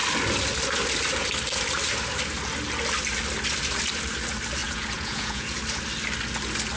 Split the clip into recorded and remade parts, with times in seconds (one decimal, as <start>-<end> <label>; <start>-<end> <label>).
0.0-4.6 recorded; 4.6-5.6 remade; 5.6-6.8 recorded